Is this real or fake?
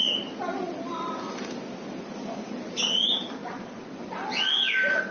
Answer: real